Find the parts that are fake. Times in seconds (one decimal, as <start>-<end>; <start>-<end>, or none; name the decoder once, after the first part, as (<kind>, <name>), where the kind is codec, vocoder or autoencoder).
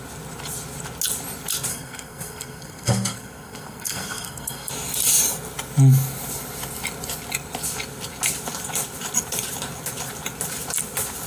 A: 1.7-4.7 (codec, SNAC)